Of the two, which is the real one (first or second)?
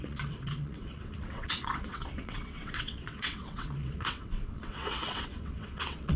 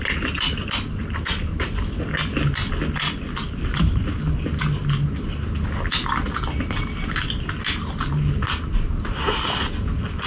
second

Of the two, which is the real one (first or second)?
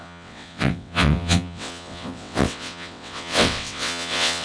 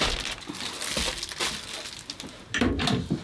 second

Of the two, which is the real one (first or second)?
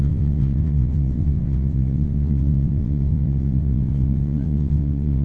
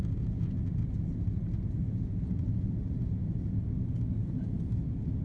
second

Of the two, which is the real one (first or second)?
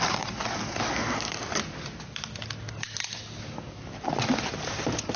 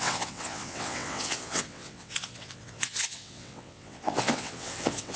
first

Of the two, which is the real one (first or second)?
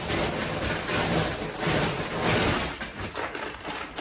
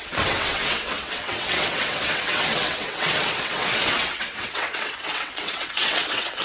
first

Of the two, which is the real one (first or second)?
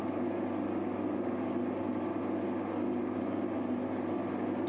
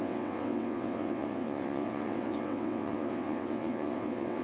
first